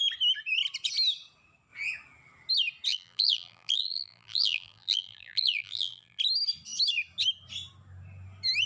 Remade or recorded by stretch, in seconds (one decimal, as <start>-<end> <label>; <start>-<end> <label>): 0.0-2.9 recorded; 2.9-6.2 remade; 6.2-8.7 recorded